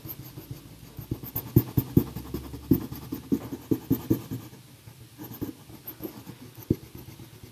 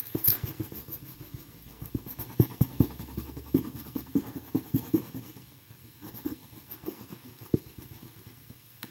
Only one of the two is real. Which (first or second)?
first